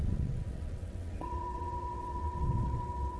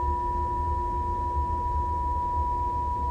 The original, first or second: second